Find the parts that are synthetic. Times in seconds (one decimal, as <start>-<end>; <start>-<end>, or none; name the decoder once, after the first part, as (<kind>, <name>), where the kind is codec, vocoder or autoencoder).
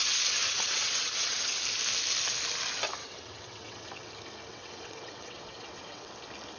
0.0-1.6 (vocoder, WaveNeXt); 3.0-4.1; 4.5-6.1